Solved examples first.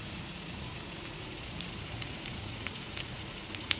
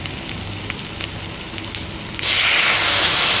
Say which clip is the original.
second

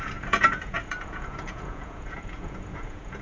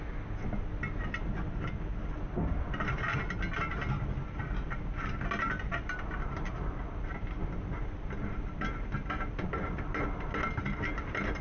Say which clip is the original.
second